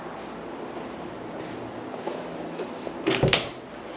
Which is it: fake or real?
real